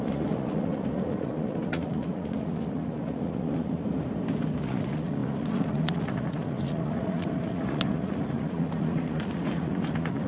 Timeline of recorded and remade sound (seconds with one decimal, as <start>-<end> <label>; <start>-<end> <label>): 0.0-3.8 remade; 3.8-4.6 recorded; 4.6-10.3 remade